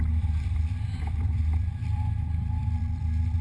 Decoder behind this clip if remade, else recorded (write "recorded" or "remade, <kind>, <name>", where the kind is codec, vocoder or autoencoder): remade, vocoder, BigVGAN v2